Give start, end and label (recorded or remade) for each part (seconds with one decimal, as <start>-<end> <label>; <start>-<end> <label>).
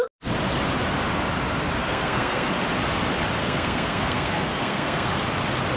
0.0-1.8 recorded; 1.8-2.5 remade; 2.5-3.4 recorded; 3.4-5.1 remade; 5.1-5.8 recorded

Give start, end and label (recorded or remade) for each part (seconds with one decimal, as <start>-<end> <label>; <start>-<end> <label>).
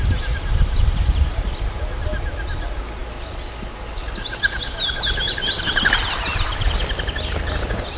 0.0-8.0 recorded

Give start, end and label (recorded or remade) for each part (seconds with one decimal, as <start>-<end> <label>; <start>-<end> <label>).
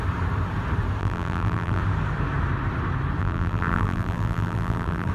0.0-1.0 recorded; 1.0-1.8 remade; 1.8-3.2 recorded; 3.2-5.1 remade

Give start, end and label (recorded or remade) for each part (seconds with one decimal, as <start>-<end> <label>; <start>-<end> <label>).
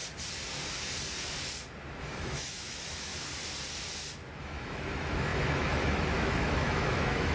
0.0-2.0 recorded; 2.0-3.1 remade; 3.1-4.4 recorded; 4.4-7.3 remade